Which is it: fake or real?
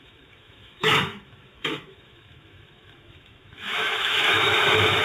fake